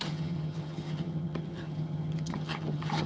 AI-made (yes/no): yes